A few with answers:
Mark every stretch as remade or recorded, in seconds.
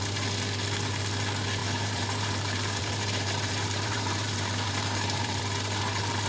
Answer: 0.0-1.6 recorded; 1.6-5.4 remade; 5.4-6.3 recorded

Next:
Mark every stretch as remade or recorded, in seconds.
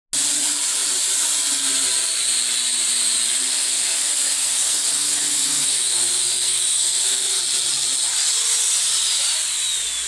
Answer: 0.0-3.5 recorded; 3.5-7.4 remade; 7.4-10.1 recorded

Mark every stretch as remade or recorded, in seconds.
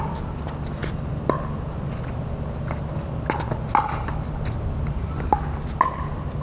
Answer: 0.0-0.8 recorded; 0.8-1.7 remade; 1.7-6.4 recorded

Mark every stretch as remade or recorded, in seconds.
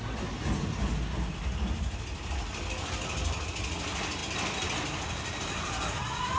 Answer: 0.0-6.4 recorded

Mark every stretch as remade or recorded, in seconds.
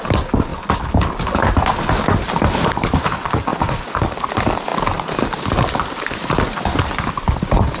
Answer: 0.0-7.8 recorded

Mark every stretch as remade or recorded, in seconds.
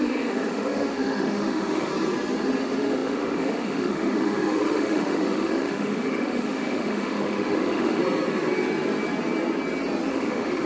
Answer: 0.0-1.9 remade; 1.9-2.6 recorded; 2.6-8.0 remade; 8.0-10.1 recorded; 10.1-10.7 remade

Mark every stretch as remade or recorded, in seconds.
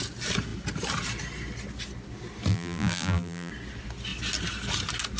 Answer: 0.0-2.5 recorded; 2.5-3.5 remade; 3.5-5.2 recorded